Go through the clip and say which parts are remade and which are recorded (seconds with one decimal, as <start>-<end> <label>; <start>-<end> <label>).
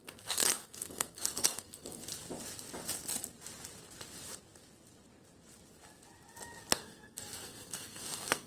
0.0-2.0 remade; 2.0-6.7 recorded; 6.7-8.5 remade